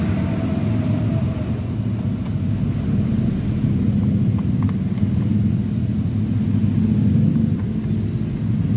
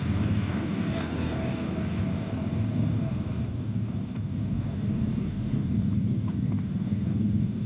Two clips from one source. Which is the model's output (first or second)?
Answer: second